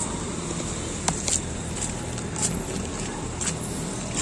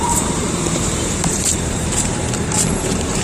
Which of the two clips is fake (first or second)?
second